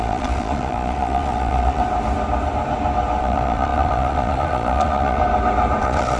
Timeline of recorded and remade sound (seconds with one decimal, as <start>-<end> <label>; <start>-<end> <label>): 0.0-1.8 remade; 1.8-3.2 recorded; 3.2-5.2 remade; 5.2-5.8 recorded; 5.8-6.2 remade